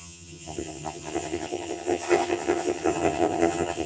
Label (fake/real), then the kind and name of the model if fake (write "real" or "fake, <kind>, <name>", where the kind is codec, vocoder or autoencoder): fake, vocoder, HiFi-GAN